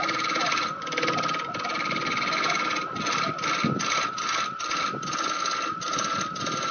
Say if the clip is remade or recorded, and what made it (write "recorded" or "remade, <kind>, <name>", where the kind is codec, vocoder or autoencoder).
recorded